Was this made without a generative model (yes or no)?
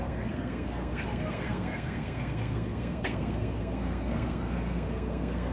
no